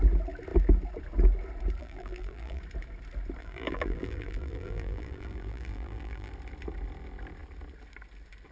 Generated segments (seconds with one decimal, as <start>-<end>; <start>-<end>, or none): 1.8-2.6; 3.4-6.3